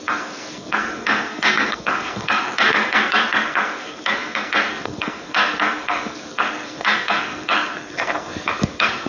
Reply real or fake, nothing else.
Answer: fake